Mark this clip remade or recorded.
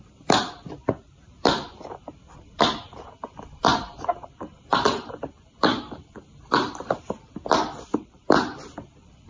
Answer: remade